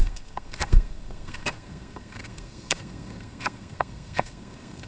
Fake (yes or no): yes